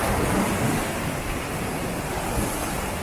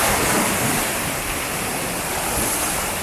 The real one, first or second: first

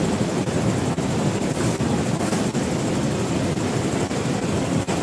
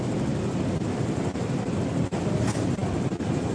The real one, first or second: second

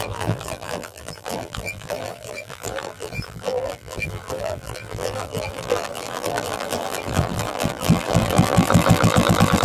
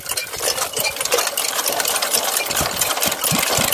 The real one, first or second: second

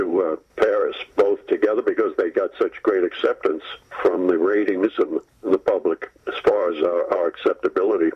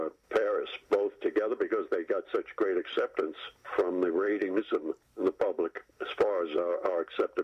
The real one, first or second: second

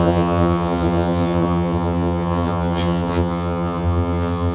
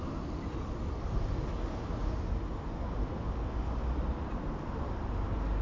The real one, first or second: second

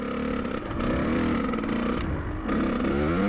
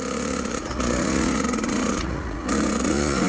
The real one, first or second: first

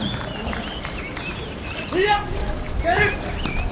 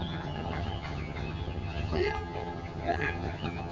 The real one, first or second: first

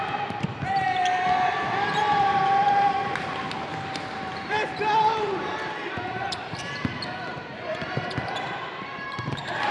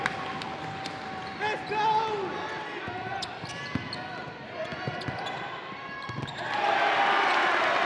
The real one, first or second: second